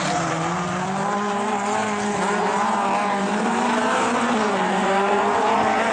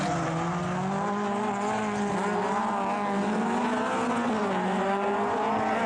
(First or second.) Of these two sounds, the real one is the second